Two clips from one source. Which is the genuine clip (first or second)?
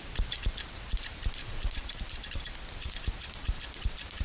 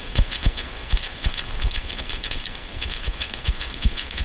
first